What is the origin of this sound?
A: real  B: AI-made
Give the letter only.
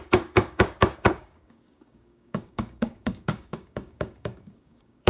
B